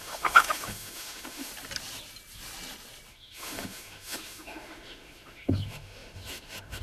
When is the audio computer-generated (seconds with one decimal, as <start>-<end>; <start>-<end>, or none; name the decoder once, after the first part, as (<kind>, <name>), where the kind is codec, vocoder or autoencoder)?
0.0-1.5 (autoencoder, DAC-VAE); 3.1-6.8